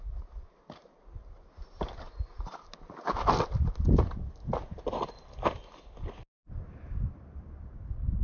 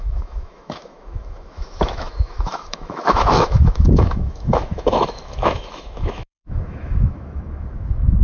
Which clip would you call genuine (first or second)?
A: first